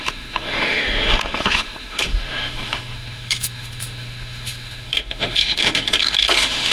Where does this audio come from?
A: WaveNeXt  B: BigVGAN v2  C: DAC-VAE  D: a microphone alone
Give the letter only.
C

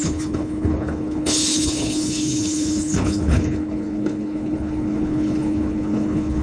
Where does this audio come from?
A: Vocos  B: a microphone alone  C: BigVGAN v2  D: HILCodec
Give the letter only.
D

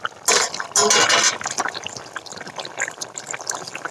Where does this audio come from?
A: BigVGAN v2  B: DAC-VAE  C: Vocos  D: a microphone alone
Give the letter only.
D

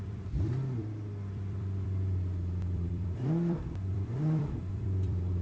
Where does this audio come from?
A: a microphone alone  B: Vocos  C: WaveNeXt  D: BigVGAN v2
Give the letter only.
D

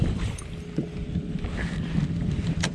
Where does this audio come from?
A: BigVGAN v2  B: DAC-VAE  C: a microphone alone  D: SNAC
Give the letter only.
C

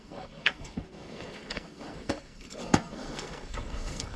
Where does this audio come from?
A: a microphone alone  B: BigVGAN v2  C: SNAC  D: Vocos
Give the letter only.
C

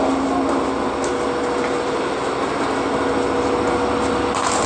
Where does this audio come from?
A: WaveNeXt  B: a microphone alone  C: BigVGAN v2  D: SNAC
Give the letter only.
B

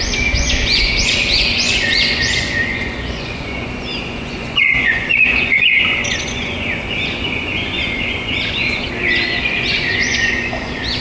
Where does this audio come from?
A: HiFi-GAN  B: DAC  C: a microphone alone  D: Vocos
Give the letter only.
D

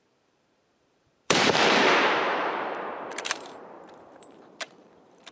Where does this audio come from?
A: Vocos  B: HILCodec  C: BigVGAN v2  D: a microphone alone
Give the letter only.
C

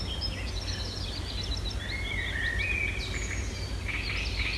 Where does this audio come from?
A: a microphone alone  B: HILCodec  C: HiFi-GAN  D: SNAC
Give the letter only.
A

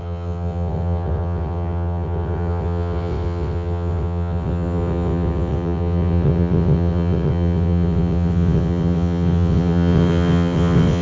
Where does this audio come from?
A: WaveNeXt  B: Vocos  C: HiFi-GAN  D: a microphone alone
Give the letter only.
A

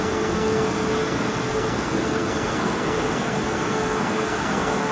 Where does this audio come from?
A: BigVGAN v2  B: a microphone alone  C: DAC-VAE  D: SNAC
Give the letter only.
D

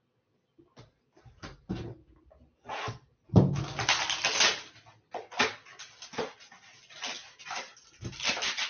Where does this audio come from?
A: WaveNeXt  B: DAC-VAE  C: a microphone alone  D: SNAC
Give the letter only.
C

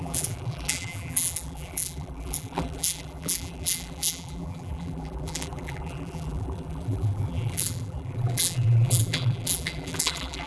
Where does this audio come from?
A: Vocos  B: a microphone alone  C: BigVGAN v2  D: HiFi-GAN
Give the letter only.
C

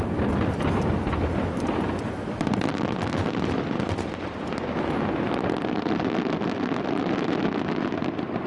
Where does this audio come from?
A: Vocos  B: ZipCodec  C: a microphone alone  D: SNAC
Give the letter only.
C